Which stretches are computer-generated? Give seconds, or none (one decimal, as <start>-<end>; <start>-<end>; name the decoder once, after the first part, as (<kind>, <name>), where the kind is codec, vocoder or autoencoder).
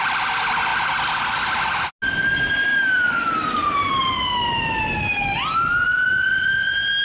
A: 2.6-3.9 (vocoder, BigVGAN v2)